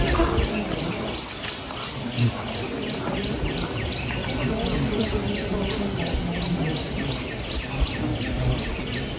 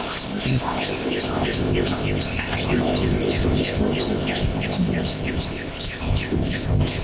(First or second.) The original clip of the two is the first